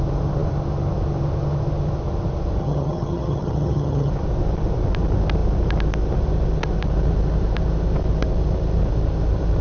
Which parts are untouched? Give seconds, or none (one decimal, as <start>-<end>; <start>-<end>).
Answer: 0.0-2.6; 4.1-9.6